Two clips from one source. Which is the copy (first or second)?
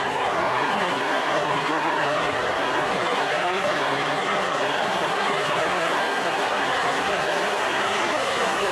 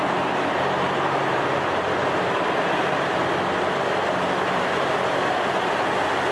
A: first